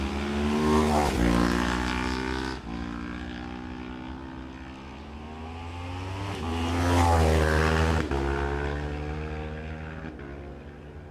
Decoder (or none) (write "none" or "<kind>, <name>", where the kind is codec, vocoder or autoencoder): none